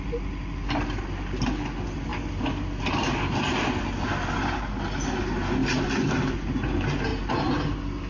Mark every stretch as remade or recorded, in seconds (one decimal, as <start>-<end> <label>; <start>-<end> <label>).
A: 0.0-8.1 recorded